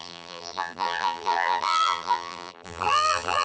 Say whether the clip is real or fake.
fake